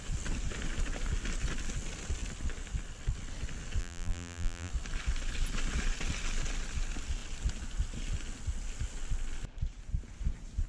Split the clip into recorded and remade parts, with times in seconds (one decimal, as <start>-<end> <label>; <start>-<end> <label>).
0.0-3.8 recorded; 3.8-4.7 remade; 4.7-10.7 recorded